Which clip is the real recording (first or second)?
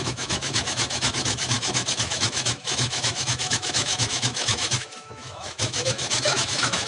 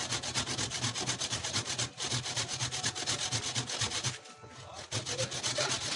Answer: second